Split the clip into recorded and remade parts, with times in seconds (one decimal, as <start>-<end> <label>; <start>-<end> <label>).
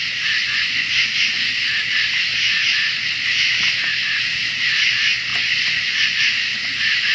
0.0-0.4 recorded; 0.4-1.0 remade; 1.0-5.3 recorded; 5.3-6.2 remade; 6.2-7.1 recorded